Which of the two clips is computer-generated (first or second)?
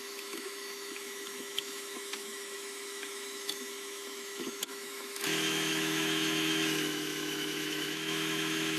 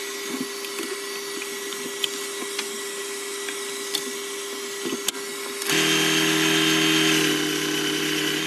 first